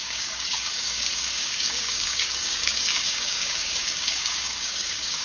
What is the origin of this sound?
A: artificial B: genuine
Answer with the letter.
A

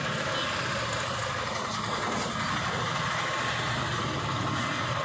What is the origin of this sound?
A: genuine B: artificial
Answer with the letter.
A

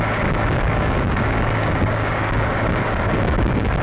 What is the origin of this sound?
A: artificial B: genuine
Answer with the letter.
A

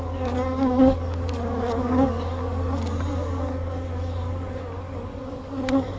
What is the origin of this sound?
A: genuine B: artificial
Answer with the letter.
B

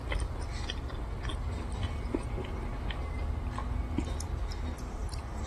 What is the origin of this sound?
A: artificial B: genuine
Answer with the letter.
B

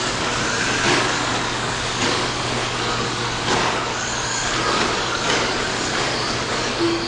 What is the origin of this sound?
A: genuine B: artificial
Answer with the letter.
B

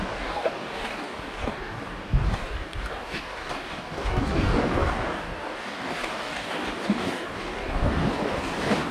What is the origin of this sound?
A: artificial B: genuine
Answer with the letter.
A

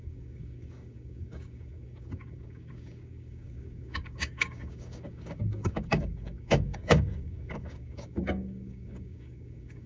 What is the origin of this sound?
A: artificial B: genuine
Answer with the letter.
A